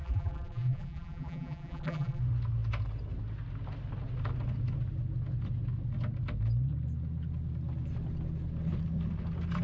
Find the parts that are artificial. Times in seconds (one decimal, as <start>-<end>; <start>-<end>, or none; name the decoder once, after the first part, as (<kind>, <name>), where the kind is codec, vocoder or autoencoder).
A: 0.0-2.2 (vocoder, BigVGAN v2)